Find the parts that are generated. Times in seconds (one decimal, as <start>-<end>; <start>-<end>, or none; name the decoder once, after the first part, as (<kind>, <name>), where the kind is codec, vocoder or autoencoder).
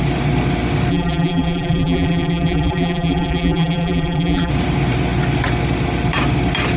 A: 0.9-4.5 (vocoder, BigVGAN v2)